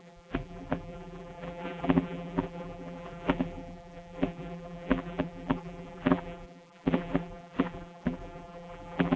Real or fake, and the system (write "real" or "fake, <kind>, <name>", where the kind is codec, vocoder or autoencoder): fake, vocoder, BigVGAN v2